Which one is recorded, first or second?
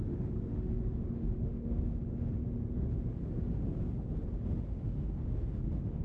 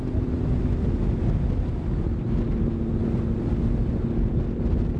second